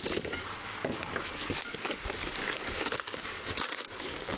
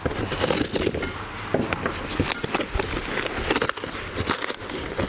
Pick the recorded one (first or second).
second